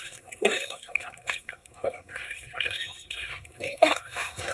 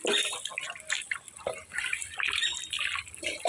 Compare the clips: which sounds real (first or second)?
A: second